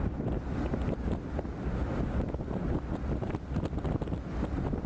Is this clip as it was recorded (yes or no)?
yes